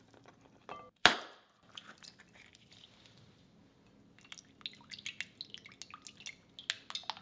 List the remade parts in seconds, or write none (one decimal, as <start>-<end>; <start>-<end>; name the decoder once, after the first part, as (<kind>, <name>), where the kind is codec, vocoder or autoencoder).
0.6-2.5 (vocoder, BigVGAN v2)